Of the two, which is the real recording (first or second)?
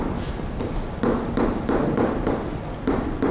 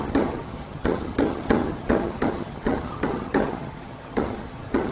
first